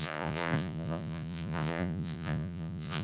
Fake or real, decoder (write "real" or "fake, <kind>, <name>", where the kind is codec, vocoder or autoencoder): fake, vocoder, Vocos